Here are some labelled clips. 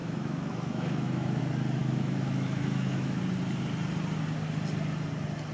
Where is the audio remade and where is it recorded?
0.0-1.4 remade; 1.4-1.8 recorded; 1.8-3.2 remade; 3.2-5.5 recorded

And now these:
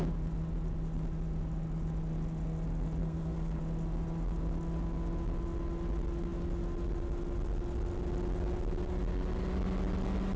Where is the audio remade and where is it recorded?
0.0-3.0 recorded; 3.0-3.6 remade; 3.6-10.4 recorded

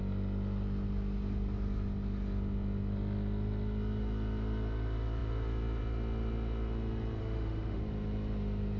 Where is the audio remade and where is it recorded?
0.0-7.2 recorded; 7.2-7.8 remade; 7.8-8.8 recorded

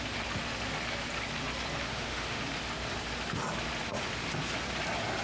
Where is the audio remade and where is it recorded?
0.0-1.8 recorded; 1.8-2.4 remade; 2.4-5.2 recorded